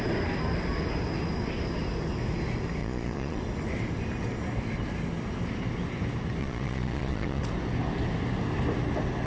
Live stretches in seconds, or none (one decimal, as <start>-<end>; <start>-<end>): 0.0-2.8; 3.4-6.4; 7.4-9.3